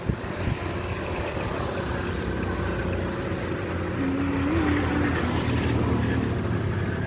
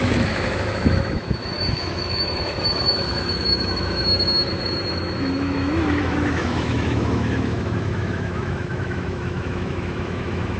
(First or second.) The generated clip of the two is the second